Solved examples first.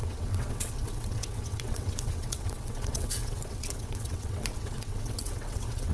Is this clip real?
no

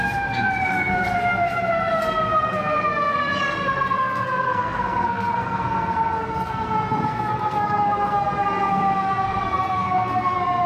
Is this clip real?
no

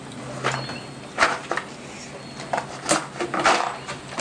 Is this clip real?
yes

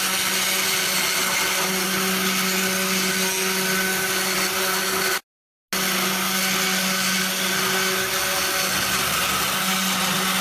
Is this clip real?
yes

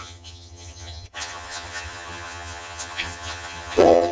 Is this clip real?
no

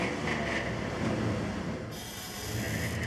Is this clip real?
yes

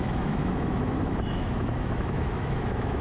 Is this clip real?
no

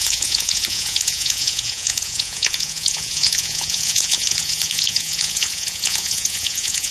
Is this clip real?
no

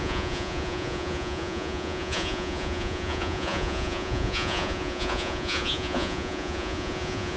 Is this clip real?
no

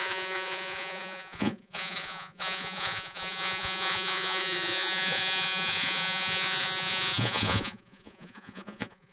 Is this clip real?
no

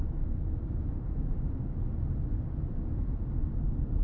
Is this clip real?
yes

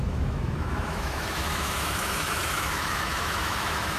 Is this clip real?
no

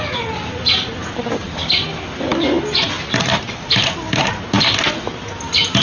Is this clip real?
yes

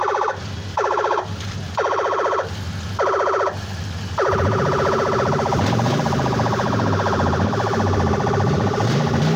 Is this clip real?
no